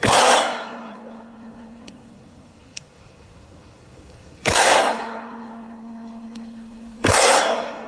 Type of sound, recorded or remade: remade